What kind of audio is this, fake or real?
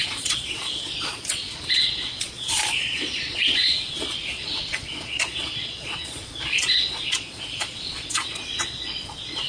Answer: fake